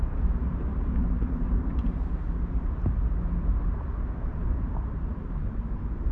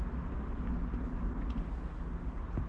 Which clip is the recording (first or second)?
second